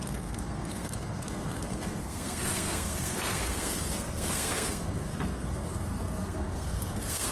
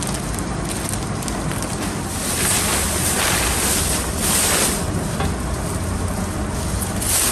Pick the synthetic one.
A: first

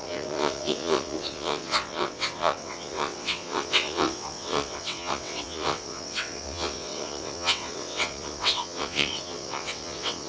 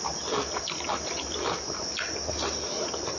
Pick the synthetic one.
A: first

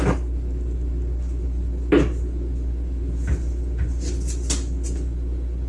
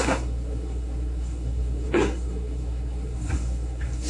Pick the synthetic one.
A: second